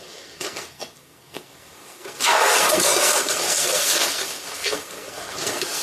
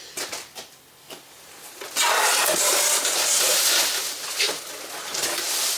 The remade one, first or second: first